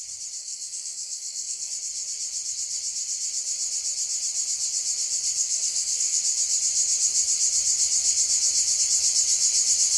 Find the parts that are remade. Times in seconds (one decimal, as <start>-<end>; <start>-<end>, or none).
0.4-1.7; 5.4-6.2